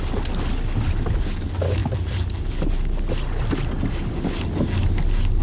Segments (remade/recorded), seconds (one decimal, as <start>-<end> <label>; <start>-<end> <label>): 0.0-5.4 recorded